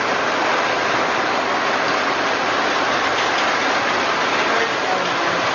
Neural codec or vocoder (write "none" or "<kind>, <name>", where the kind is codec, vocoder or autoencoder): none